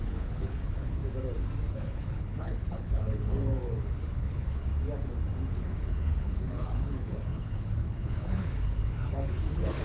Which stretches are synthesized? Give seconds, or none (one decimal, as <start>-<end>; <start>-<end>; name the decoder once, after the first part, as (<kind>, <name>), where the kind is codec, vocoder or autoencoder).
0.0-1.0 (codec, HILCodec); 1.7-4.7; 5.6-9.8